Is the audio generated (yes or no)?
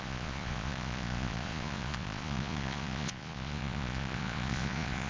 yes